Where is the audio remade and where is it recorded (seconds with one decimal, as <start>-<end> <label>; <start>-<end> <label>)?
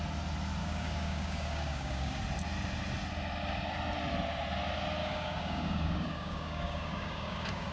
0.0-0.6 recorded; 0.6-2.2 remade; 2.2-5.0 recorded; 5.0-7.7 remade